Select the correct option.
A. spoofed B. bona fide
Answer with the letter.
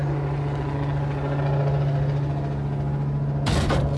B